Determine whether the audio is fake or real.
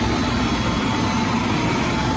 real